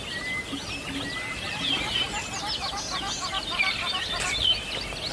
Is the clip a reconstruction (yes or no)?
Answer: no